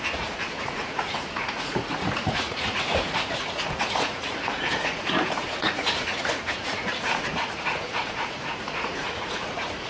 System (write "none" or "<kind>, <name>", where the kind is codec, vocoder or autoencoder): vocoder, Vocos